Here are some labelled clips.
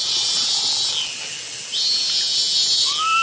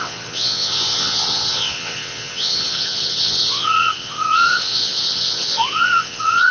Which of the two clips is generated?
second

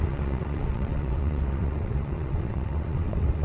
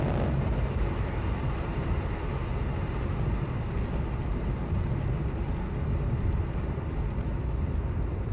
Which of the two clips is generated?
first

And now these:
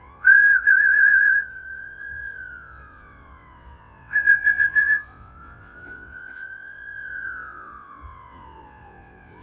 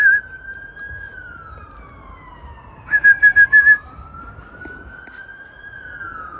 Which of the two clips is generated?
first